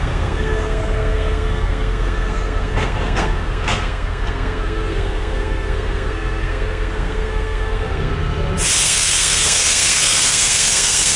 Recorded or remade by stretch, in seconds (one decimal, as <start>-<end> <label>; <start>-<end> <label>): 0.0-8.1 remade; 8.1-8.8 recorded; 8.8-11.2 remade